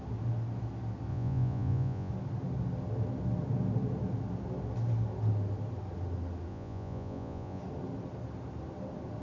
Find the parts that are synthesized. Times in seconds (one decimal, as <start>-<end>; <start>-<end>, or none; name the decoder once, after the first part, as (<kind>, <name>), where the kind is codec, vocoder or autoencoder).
1.1-2.1 (vocoder, Vocos); 6.5-7.6

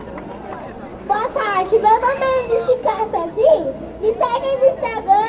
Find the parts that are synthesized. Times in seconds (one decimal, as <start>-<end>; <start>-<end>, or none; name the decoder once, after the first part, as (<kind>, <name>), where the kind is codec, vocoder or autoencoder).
0.9-4.1 (codec, DAC)

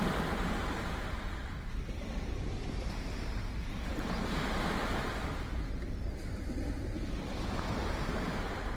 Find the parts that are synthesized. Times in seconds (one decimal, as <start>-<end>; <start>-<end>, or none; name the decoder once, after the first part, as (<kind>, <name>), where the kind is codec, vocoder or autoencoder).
0.0-3.9 (vocoder, BigVGAN v2); 5.5-8.8

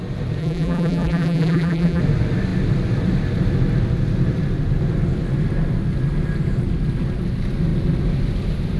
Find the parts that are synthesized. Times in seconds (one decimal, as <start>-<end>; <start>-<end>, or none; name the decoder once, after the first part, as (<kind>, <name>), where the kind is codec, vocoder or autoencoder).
0.4-2.0 (vocoder, BigVGAN v2)

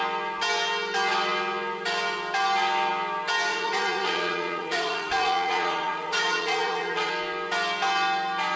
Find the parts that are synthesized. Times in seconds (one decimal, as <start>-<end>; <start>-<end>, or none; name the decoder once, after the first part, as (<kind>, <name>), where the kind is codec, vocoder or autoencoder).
3.5-7.1 (vocoder, Vocos)